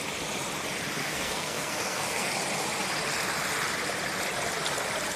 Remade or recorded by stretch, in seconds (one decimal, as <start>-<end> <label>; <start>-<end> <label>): 0.0-1.0 recorded; 1.0-2.3 remade; 2.3-5.2 recorded